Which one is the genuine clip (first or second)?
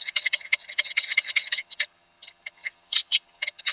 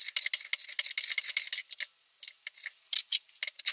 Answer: second